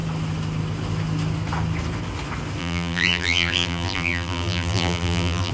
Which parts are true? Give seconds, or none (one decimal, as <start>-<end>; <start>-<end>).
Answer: 0.0-2.6